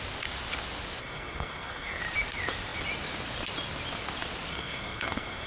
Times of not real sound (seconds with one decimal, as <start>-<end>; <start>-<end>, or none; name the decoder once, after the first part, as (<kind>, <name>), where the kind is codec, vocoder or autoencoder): 1.0-2.0 (codec, SNAC); 4.5-5.5